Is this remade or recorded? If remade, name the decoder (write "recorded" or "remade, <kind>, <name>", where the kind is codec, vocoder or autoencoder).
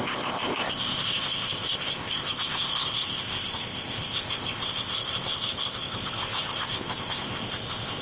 remade, codec, ZipCodec